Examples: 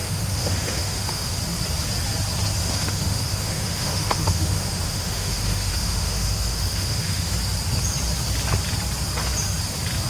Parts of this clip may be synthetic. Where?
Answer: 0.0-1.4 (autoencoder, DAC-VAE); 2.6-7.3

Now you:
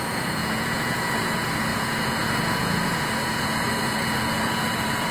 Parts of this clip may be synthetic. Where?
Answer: 0.0-5.1 (vocoder, Vocos)

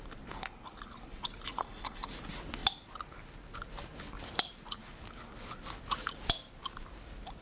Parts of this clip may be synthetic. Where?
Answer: 1.6-2.1 (codec, SNAC)

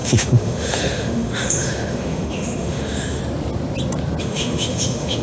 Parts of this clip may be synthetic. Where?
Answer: 0.0-3.2 (autoencoder, DAC-VAE); 4.2-5.2

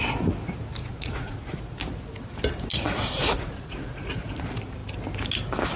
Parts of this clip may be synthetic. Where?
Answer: 0.8-1.6 (vocoder, Vocos); 2.7-4.3

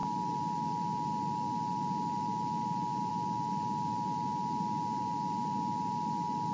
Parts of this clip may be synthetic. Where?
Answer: none

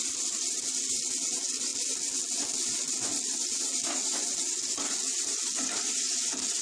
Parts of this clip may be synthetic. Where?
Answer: none

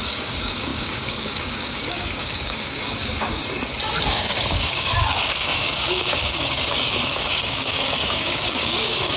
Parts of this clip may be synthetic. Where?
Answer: 0.0-3.4 (codec, DAC); 4.1-9.2